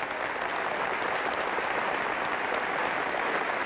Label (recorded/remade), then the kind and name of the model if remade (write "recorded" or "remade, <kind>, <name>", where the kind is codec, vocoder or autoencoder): recorded